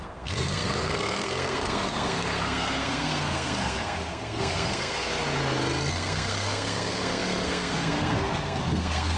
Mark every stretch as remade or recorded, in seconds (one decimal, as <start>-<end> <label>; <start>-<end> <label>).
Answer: 0.0-5.1 remade; 5.1-5.9 recorded; 5.9-9.2 remade